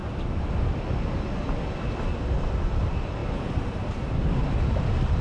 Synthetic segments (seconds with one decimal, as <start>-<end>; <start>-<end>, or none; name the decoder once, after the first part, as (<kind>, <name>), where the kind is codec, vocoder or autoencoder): 1.8-5.2 (vocoder, BigVGAN v2)